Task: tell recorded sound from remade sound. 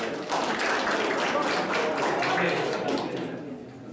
recorded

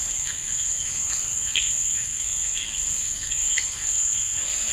remade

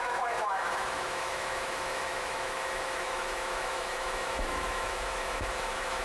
remade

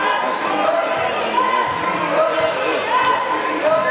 recorded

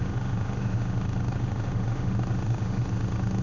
remade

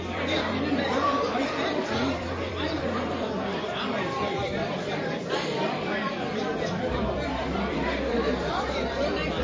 remade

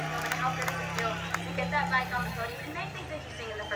recorded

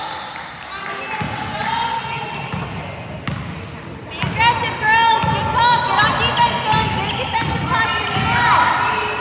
recorded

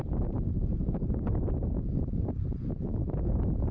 remade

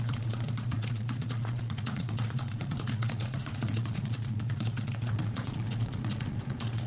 remade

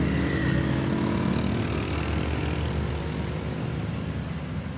recorded